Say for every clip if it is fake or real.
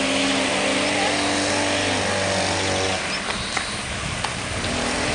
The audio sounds real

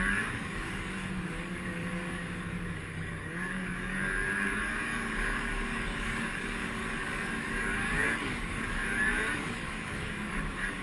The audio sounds fake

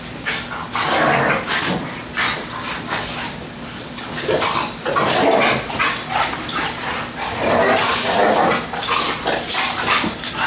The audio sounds real